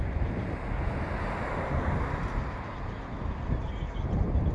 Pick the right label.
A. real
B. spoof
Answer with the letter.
A